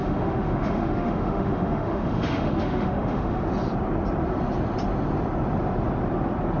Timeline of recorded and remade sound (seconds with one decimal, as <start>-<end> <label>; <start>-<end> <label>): 0.0-3.4 remade; 3.4-6.6 recorded